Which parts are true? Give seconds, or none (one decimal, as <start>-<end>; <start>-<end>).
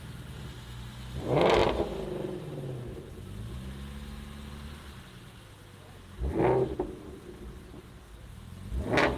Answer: 0.0-9.2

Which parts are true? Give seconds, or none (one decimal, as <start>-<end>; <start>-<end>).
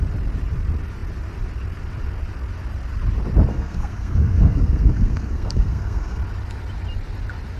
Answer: 0.0-3.5; 6.2-7.6